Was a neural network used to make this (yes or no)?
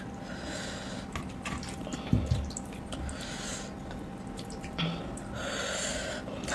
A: no